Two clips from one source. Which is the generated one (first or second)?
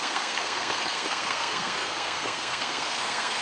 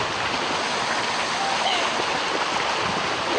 first